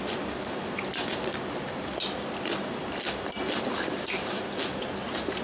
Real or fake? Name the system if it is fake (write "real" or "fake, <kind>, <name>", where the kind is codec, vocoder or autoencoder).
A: real